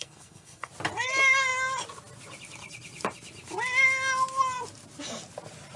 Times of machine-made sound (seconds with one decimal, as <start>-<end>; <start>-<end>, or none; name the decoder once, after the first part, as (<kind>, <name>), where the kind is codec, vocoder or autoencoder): 0.0-0.7 (codec, SNAC)